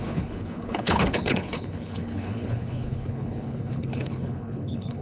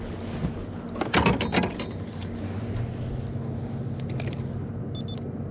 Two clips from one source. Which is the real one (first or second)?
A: second